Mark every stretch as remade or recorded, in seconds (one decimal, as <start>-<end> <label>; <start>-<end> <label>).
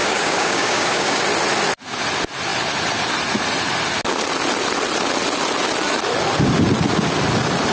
0.0-1.2 remade; 1.2-7.7 recorded